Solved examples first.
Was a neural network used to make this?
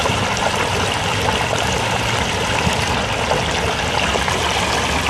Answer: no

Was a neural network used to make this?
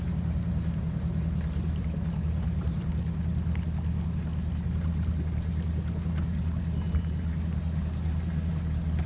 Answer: no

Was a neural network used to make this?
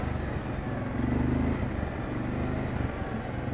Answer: no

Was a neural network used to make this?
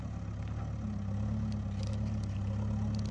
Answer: no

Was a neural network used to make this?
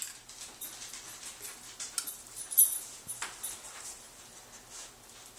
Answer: no